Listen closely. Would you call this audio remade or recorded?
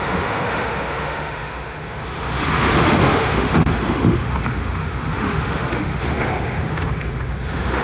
remade